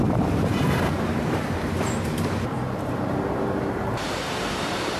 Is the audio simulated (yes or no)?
yes